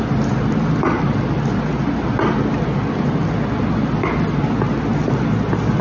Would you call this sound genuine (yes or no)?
yes